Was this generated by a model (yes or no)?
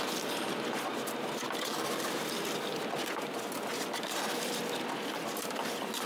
no